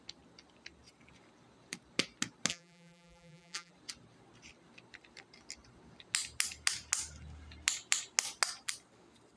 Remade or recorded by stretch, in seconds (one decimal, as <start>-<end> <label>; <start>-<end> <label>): 0.0-2.5 recorded; 2.5-3.7 remade; 3.7-9.4 recorded